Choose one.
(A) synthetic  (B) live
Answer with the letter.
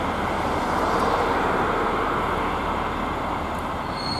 B